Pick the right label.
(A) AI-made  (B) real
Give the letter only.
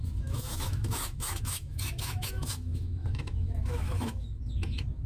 A